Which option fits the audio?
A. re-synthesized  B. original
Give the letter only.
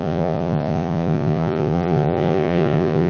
A